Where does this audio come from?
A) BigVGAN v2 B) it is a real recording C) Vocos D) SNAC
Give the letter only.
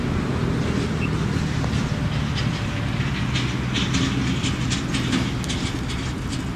B